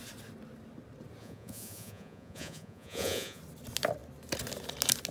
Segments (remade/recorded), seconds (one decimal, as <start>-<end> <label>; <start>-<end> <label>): 0.0-1.2 recorded; 1.2-3.4 remade; 3.4-5.1 recorded